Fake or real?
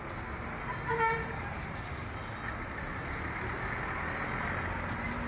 real